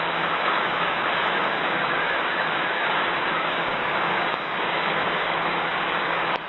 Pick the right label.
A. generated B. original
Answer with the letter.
A